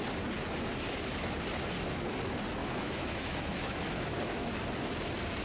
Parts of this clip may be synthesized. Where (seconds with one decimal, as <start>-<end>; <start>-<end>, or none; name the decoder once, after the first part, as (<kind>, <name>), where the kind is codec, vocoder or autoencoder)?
2.6-4.6 (autoencoder, DAC-VAE)